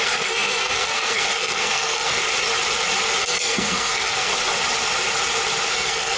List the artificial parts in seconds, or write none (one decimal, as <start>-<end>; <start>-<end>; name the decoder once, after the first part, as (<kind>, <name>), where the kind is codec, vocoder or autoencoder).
0.0-2.2 (codec, SNAC); 3.2-4.3; 5.7-6.2